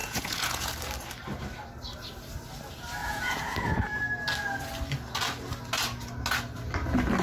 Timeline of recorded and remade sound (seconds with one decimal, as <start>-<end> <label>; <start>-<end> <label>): 0.0-0.7 remade; 0.7-3.0 recorded; 3.0-4.0 remade; 4.0-7.2 recorded